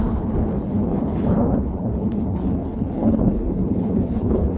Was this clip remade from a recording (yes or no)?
yes